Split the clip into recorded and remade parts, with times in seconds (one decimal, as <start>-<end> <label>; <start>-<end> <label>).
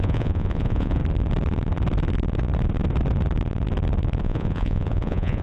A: 0.0-1.0 remade; 1.0-4.2 recorded; 4.2-5.4 remade